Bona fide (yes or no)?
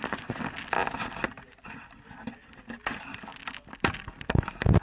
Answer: yes